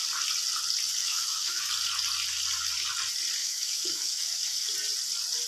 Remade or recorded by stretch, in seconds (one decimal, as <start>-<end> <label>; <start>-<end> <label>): 0.0-1.0 recorded; 1.0-1.7 remade; 1.7-3.4 recorded; 3.4-4.7 remade; 4.7-5.5 recorded